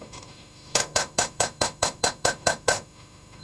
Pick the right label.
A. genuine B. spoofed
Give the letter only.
B